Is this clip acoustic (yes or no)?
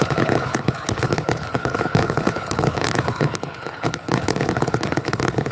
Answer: no